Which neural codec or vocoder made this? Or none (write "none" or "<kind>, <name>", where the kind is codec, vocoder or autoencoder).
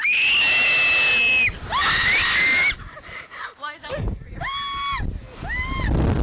none